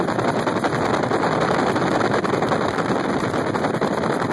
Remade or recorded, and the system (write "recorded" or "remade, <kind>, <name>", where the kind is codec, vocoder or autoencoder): remade, vocoder, BigVGAN v2